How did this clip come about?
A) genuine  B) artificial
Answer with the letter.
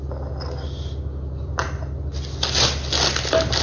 A